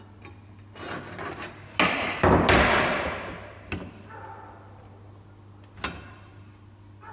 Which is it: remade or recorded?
recorded